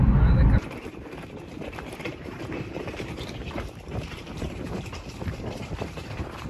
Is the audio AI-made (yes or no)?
yes